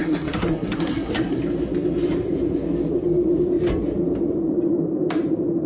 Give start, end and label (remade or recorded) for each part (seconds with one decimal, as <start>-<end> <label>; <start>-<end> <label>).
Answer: 0.0-1.4 remade; 1.4-5.7 recorded